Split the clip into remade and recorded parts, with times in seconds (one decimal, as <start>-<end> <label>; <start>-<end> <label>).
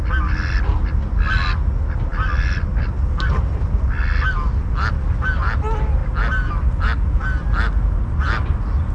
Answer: 0.0-8.9 recorded